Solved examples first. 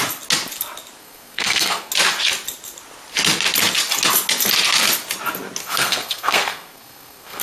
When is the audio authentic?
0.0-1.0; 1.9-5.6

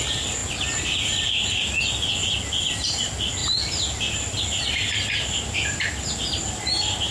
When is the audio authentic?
0.0-7.1

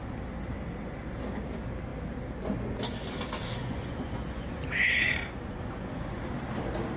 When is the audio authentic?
0.0-3.6; 6.2-7.0

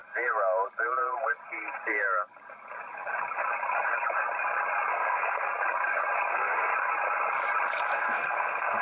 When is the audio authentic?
0.0-4.9; 5.5-6.3; 6.7-7.9

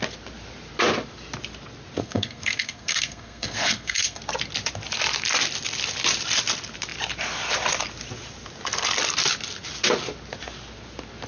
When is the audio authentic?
0.0-2.0; 4.2-11.3

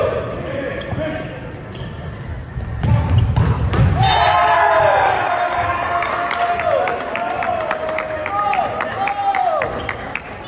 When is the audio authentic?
0.0-4.4; 6.1-10.5

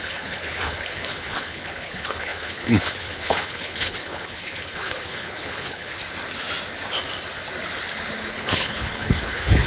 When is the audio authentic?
6.0-8.3